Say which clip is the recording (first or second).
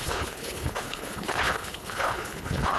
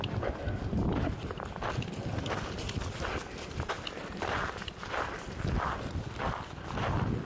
second